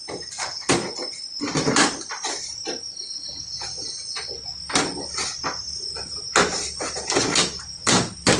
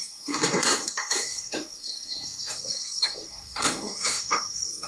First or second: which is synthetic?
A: second